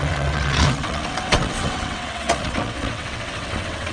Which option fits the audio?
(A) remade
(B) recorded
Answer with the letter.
A